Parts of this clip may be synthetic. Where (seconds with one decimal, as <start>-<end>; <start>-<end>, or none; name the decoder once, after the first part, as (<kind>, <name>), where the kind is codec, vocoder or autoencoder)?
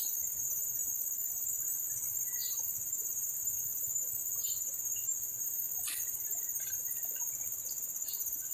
none